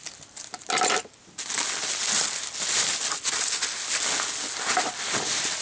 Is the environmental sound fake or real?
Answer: real